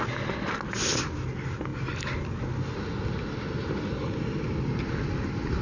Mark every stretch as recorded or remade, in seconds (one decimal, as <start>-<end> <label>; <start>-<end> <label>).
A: 0.0-5.6 recorded